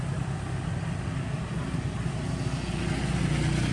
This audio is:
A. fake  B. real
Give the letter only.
B